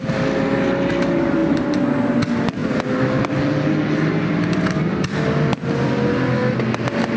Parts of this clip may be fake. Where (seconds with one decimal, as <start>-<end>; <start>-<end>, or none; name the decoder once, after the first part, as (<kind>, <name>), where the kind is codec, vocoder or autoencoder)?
none